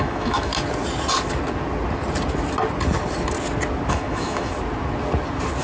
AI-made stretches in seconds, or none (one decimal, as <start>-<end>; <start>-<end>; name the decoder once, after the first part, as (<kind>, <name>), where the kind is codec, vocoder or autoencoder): 0.0-0.5 (autoencoder, DAC-VAE); 3.9-4.5

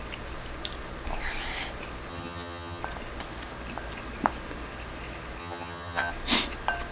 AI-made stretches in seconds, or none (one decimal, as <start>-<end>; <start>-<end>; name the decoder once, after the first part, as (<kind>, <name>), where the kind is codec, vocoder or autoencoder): 2.1-2.8 (vocoder, HiFi-GAN); 5.4-6.1

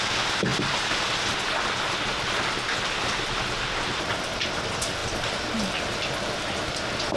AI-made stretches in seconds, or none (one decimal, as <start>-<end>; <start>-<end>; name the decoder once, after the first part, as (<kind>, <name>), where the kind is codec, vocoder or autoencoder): none